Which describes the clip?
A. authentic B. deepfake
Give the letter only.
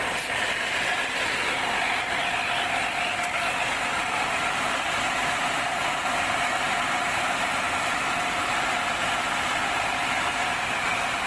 A